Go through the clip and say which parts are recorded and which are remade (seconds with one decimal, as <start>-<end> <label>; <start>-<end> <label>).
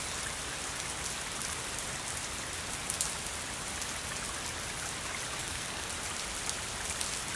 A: 0.0-5.4 recorded; 5.4-5.9 remade; 5.9-7.4 recorded